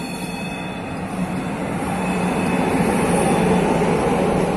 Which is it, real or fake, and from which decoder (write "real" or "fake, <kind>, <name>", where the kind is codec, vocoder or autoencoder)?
real